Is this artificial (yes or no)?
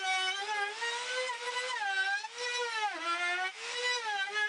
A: no